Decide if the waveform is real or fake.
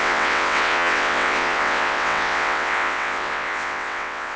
fake